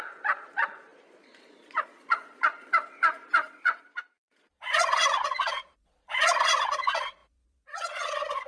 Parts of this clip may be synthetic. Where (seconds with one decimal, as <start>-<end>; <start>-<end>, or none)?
0.0-8.5